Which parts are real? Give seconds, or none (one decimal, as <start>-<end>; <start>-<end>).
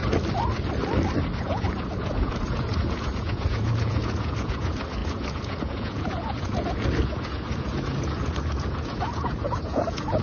0.0-1.4